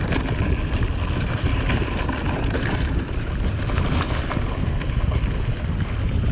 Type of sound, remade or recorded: recorded